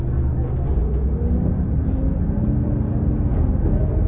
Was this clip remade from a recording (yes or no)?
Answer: no